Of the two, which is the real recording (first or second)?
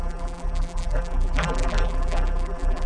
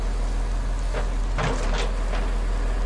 second